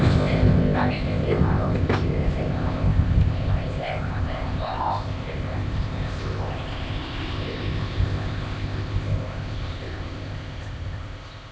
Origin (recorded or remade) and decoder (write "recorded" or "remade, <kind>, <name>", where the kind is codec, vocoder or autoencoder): remade, codec, ZipCodec